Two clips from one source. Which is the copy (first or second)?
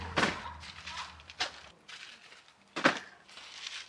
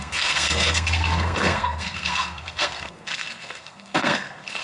second